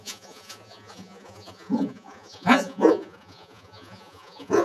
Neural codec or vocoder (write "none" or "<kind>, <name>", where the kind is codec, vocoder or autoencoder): vocoder, Vocos